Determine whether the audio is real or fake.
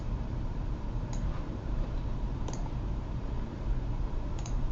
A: fake